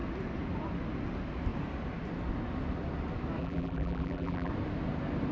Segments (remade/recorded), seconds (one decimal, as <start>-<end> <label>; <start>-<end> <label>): 0.0-3.4 recorded; 3.4-4.5 remade; 4.5-5.3 recorded